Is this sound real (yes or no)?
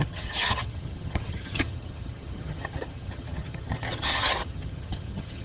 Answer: no